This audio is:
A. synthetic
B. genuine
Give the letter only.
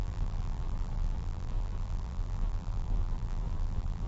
A